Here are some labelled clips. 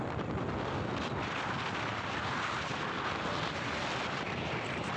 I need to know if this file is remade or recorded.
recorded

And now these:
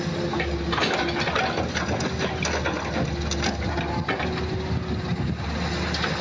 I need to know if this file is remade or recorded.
recorded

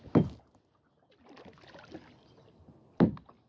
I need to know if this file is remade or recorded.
recorded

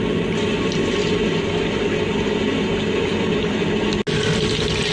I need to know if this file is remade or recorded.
recorded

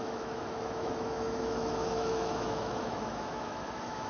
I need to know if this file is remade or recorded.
remade